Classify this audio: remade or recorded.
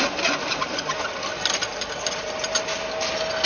recorded